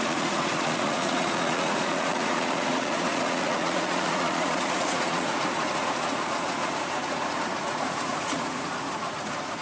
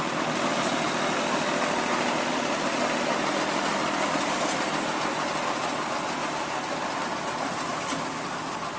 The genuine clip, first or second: second